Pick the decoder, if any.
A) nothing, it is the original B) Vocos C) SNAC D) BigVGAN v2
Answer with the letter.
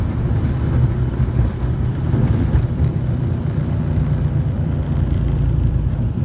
D